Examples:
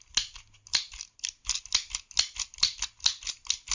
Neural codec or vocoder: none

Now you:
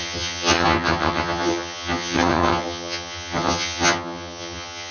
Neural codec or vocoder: vocoder, HiFi-GAN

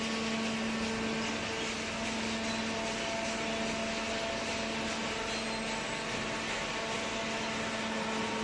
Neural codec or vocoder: none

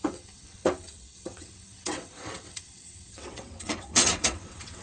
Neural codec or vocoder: vocoder, WaveNeXt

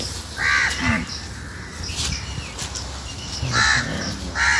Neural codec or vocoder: none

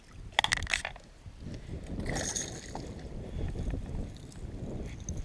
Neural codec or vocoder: none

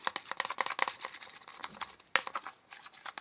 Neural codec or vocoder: none